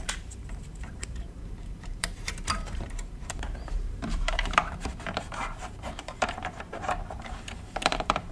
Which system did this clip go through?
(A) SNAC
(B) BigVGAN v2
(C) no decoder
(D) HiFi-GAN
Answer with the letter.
B